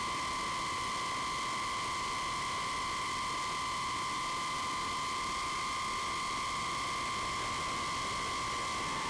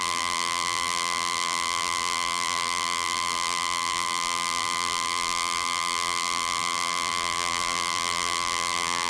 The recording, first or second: first